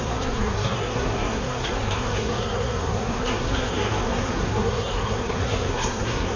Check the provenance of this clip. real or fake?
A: fake